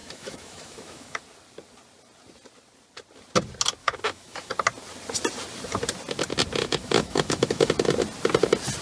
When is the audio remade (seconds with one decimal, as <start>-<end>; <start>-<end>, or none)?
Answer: 0.0-1.2; 3.8-4.5; 6.6-7.7